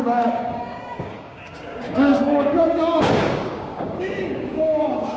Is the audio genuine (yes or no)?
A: no